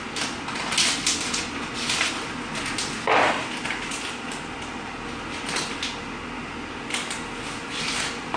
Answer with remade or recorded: recorded